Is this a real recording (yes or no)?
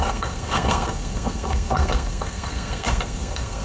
no